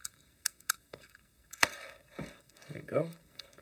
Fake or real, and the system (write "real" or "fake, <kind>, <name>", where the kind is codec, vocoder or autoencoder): fake, codec, SNAC